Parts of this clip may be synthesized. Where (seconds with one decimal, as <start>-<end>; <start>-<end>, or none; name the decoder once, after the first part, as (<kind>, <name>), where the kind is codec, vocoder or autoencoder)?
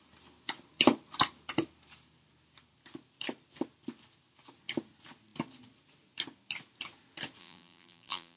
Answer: 7.4-8.4 (vocoder, BigVGAN v2)